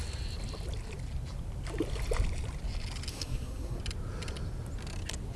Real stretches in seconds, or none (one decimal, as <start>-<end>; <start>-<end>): 0.0-3.1; 3.8-5.4